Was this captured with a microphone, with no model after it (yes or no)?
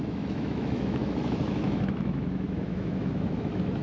no